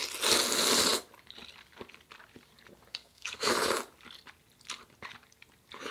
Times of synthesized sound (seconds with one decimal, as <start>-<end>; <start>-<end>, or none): 2.9-3.5